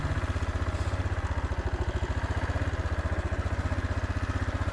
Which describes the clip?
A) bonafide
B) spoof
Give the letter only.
A